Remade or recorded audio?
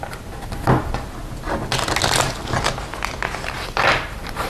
recorded